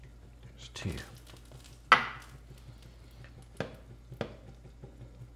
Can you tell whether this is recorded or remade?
recorded